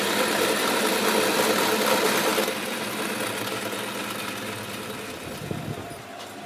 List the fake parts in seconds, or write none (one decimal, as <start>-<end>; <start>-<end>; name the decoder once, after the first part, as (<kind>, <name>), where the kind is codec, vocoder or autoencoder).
none